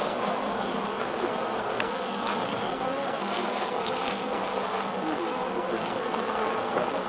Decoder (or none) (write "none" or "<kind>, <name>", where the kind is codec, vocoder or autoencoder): codec, SNAC